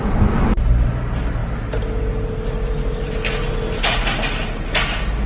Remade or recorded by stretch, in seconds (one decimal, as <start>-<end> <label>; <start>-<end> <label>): 0.0-5.3 recorded